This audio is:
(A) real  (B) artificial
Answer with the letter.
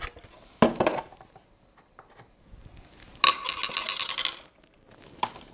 A